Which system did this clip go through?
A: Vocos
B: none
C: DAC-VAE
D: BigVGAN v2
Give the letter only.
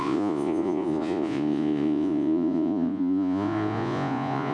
A